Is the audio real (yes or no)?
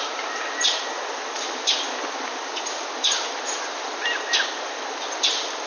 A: yes